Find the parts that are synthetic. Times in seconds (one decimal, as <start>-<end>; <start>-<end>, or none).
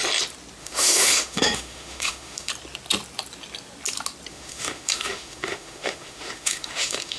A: 0.6-2.5; 4.3-7.2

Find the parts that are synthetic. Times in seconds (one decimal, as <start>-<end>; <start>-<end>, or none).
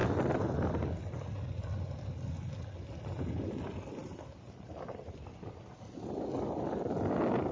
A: 4.0-6.0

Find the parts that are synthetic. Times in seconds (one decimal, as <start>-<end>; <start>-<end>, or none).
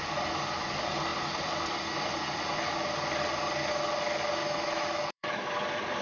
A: 4.4-5.5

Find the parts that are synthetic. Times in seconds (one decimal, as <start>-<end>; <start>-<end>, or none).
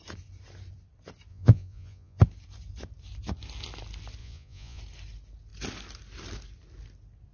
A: 1.3-2.2; 4.2-4.8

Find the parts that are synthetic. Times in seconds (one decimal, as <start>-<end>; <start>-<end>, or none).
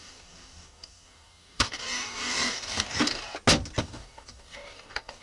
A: 0.0-3.2; 3.8-5.2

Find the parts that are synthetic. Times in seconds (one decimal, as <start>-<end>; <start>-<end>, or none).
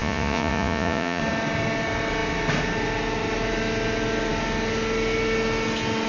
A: 0.0-1.2